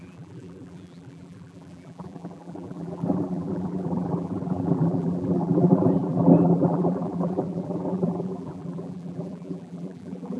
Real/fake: fake